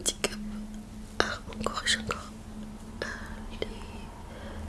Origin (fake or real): real